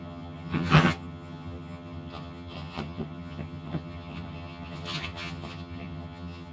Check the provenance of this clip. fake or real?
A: fake